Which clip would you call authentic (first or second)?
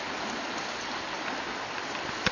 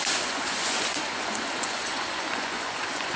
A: first